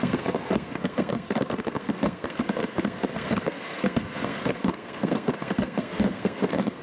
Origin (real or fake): fake